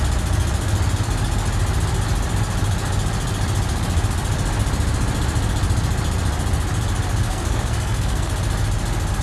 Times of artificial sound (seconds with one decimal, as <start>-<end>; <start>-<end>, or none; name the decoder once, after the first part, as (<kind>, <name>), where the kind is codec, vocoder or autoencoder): 7.3-8.3 (codec, SNAC)